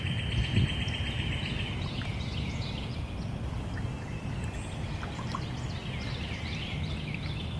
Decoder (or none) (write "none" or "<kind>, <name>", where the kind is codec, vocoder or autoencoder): none